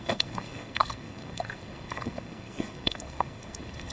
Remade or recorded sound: remade